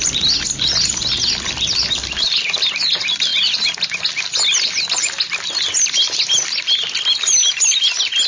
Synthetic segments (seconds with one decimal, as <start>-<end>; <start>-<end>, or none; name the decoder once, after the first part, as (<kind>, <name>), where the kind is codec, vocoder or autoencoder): none

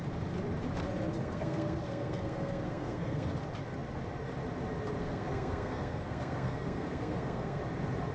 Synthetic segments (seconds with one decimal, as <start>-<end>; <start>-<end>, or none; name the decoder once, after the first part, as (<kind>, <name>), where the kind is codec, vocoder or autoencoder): 1.2-3.3 (codec, SNAC); 5.0-7.6